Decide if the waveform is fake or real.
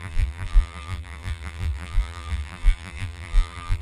fake